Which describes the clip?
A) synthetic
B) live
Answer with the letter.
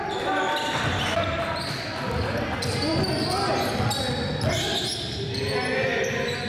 B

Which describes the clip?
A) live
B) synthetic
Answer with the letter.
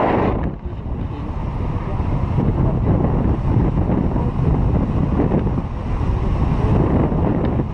A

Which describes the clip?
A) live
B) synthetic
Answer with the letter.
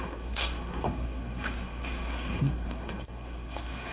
B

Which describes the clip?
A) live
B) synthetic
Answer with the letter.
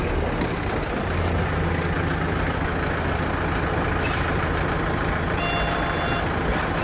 A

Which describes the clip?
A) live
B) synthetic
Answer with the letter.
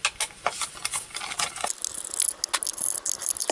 A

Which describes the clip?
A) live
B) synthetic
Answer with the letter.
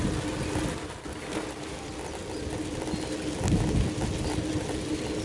A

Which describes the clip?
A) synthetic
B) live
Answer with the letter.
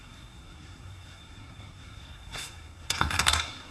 A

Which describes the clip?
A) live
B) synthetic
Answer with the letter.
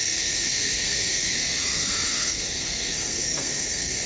B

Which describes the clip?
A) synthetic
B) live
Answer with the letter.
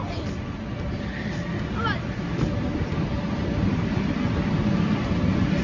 B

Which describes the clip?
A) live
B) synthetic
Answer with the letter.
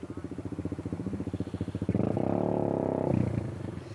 A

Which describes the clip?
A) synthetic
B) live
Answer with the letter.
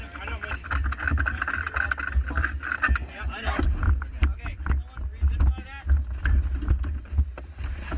B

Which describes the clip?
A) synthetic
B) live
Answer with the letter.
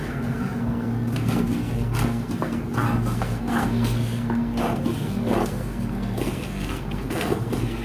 A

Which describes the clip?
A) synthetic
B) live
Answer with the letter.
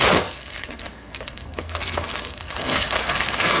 A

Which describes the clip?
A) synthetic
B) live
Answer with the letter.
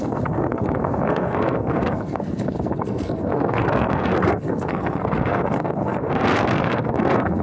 A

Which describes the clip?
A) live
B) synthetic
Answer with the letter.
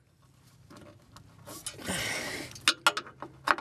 A